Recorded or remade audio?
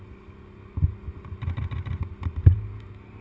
recorded